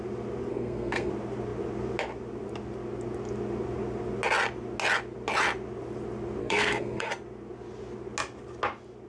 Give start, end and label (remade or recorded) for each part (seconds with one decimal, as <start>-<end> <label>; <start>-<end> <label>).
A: 0.0-0.5 recorded; 0.5-1.1 remade; 1.1-6.4 recorded; 6.4-7.1 remade; 7.1-9.1 recorded